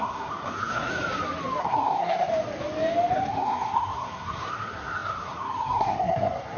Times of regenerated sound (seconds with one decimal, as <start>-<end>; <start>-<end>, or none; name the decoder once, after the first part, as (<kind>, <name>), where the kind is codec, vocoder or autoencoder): 0.0-0.9 (codec, SNAC); 1.6-2.3; 3.3-6.6